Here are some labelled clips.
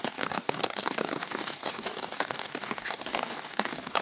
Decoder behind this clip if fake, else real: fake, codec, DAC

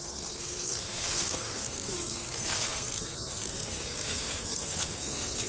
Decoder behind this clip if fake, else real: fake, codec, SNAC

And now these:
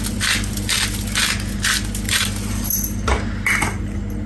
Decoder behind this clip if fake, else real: real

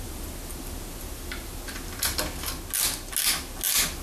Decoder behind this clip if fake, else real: real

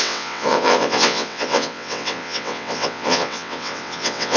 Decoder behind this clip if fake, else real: fake, vocoder, WaveNeXt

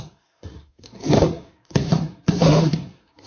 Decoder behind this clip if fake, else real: fake, codec, SNAC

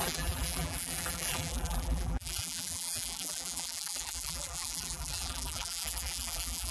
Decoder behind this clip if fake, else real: fake, vocoder, BigVGAN v2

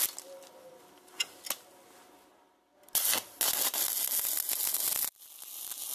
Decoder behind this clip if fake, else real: real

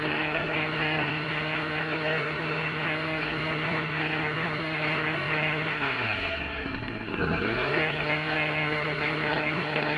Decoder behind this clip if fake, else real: fake, codec, SNAC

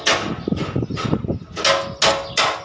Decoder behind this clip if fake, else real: real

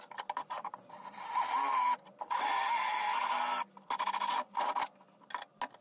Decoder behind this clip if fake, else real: real